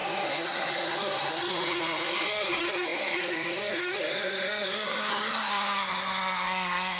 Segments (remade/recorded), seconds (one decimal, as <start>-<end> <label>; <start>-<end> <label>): 0.0-7.0 remade